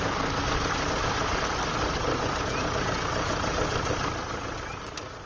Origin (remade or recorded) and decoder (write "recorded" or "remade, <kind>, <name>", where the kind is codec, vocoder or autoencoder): recorded